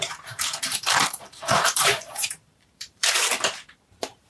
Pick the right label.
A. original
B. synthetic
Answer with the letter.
B